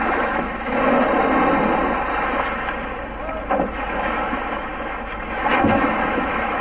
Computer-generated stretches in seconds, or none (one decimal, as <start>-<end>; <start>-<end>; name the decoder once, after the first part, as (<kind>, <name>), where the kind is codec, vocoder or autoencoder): 0.0-0.7 (autoencoder, DAC-VAE); 3.7-6.6